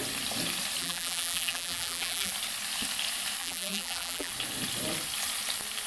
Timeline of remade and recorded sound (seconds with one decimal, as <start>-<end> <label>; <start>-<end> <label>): 0.0-0.8 recorded; 0.8-2.3 remade; 2.3-3.4 recorded; 3.4-4.3 remade; 4.3-5.9 recorded